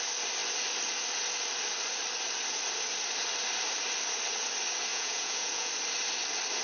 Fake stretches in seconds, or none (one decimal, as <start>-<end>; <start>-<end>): 4.9-5.7